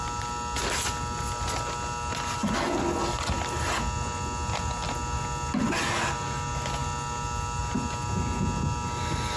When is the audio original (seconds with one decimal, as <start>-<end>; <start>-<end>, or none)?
0.0-9.4